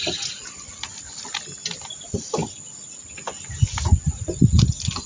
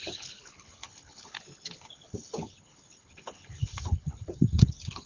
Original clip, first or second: first